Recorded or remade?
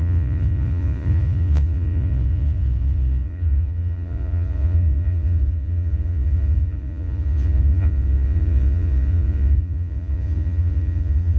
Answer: remade